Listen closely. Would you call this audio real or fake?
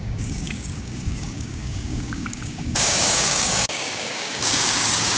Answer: fake